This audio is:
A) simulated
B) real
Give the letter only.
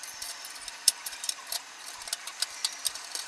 A